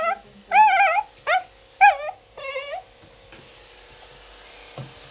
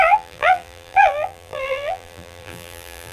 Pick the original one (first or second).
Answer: first